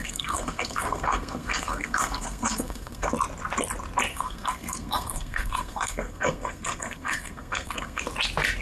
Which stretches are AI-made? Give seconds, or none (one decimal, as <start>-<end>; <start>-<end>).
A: 0.0-3.1; 4.1-8.0

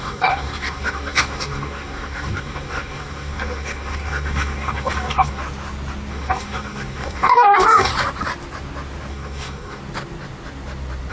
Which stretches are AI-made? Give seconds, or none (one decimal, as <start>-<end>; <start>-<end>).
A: 0.0-5.4; 6.1-7.9; 9.1-9.8

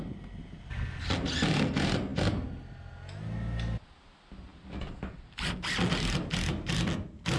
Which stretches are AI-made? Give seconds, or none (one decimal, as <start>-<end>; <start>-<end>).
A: none

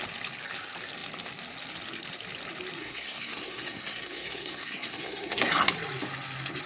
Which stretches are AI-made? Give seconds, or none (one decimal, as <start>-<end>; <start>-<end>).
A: 2.8-5.5

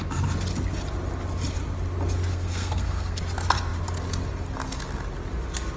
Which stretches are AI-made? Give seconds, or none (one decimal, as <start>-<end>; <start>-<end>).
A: 2.3-3.2

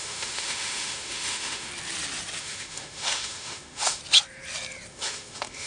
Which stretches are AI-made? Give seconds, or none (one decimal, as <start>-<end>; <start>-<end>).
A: 0.0-1.7; 2.4-4.0; 4.9-5.7

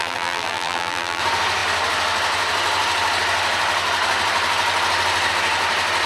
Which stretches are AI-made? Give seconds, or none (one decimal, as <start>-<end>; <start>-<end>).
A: 0.0-1.2